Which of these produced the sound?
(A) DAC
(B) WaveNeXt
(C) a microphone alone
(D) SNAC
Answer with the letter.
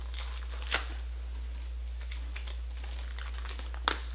C